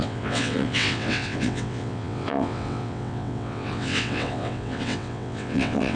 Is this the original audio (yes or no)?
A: no